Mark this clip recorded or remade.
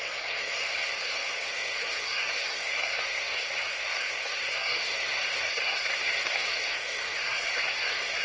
remade